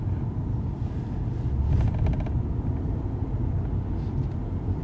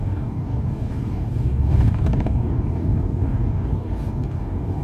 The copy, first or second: second